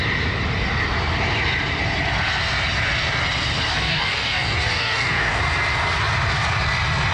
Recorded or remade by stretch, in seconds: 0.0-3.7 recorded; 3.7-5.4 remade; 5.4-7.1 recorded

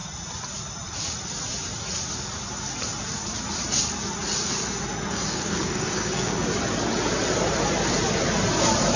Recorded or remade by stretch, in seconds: 0.0-5.1 recorded; 5.1-6.3 remade; 6.3-9.0 recorded

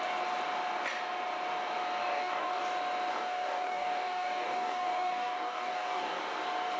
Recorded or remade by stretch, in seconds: 0.0-2.0 recorded; 2.0-2.6 remade; 2.6-3.1 recorded; 3.1-6.2 remade; 6.2-6.8 recorded

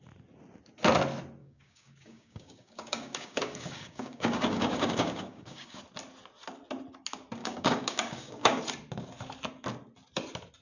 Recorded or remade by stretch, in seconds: 0.0-1.4 recorded; 1.4-5.8 remade; 5.8-7.4 recorded; 7.4-8.6 remade; 8.6-10.6 recorded

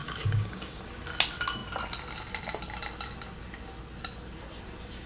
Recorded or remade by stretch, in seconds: 0.0-0.8 remade; 0.8-5.1 recorded

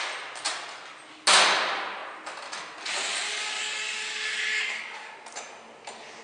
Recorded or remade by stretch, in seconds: 0.0-3.3 recorded; 3.3-5.1 remade; 5.1-6.2 recorded

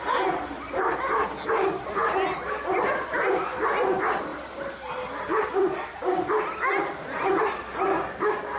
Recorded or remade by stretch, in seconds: 0.0-7.9 recorded; 7.9-8.6 remade

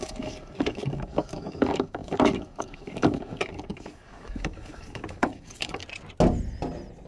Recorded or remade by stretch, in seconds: 0.0-5.8 remade; 5.8-7.1 recorded